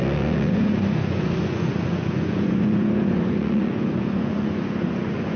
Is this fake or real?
fake